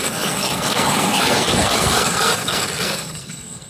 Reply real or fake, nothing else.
fake